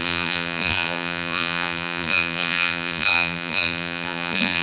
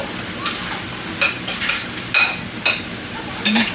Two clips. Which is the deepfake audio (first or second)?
first